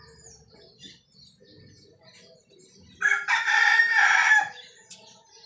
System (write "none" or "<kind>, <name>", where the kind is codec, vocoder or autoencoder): none